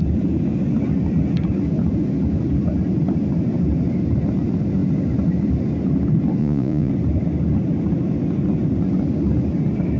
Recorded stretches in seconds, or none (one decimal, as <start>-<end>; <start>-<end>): 0.0-6.4; 6.9-10.0